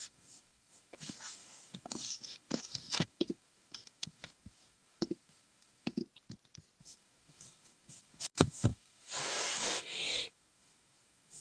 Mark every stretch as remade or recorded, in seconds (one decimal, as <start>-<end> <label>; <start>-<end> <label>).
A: 0.0-6.0 remade; 6.0-6.8 recorded; 6.8-11.4 remade

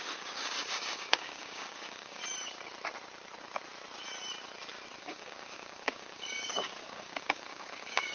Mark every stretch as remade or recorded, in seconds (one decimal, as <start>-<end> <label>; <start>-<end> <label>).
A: 0.0-2.2 remade; 2.2-5.0 recorded; 5.0-8.1 remade

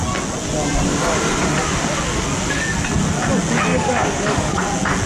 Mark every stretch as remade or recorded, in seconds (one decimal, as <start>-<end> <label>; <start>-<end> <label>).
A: 0.0-3.7 recorded; 3.7-4.6 remade; 4.6-5.1 recorded

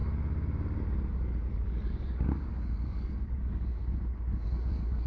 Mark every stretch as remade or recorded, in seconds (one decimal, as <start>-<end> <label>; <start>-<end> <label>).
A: 0.0-1.1 recorded; 1.1-3.8 remade; 3.8-4.4 recorded; 4.4-5.1 remade

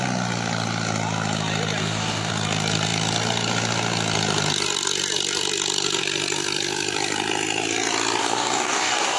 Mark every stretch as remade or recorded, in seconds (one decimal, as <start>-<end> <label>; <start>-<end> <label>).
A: 0.0-1.8 recorded; 1.8-2.3 remade; 2.3-8.2 recorded; 8.2-9.2 remade

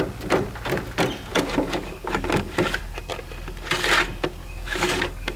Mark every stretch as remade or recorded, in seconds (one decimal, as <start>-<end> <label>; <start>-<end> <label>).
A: 0.0-1.3 recorded; 1.3-2.8 remade; 2.8-4.4 recorded; 4.4-5.4 remade

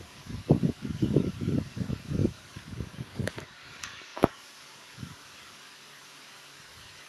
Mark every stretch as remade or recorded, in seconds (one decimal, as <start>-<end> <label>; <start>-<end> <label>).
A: 0.0-7.1 remade

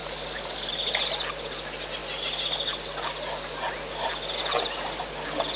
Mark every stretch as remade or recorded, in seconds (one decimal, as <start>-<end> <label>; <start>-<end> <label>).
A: 0.0-0.7 remade; 0.7-5.6 recorded